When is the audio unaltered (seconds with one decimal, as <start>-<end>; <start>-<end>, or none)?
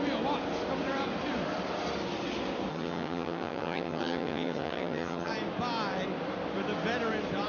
0.0-2.7; 5.3-7.5